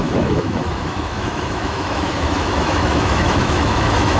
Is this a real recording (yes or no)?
no